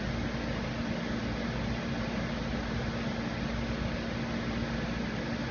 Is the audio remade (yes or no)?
no